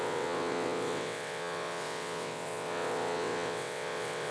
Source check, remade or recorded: remade